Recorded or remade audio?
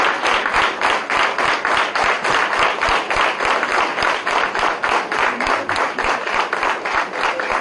recorded